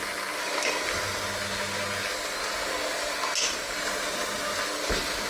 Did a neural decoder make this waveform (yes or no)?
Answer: no